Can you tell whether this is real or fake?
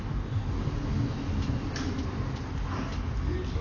real